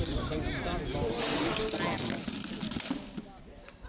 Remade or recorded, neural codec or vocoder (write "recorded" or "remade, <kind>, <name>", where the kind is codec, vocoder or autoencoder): recorded